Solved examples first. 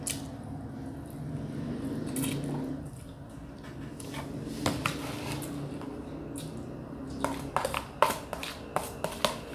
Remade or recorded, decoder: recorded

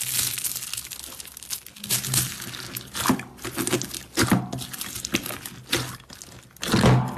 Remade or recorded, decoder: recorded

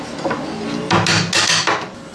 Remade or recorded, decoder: recorded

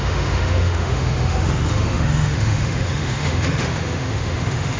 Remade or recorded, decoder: remade, autoencoder, DAC-VAE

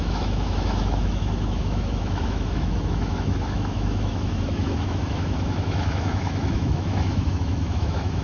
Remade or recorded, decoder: remade, autoencoder, DAC-VAE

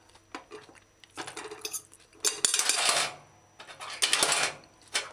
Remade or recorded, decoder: recorded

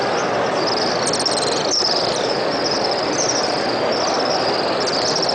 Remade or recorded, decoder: recorded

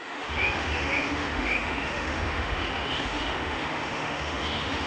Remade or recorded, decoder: remade, autoencoder, DAC-VAE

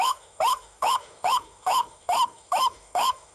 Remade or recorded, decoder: remade, autoencoder, DAC-VAE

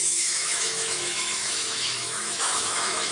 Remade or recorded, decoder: remade, autoencoder, DAC-VAE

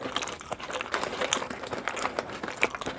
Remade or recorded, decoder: recorded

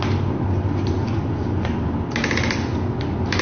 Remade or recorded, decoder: recorded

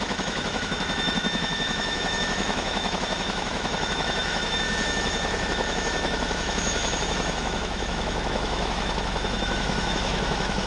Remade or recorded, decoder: remade, autoencoder, DAC-VAE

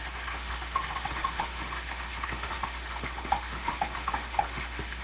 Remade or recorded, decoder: remade, autoencoder, DAC-VAE